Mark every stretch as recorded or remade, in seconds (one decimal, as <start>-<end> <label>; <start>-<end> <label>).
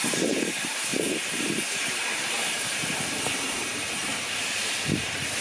0.0-4.0 remade; 4.0-5.0 recorded; 5.0-5.4 remade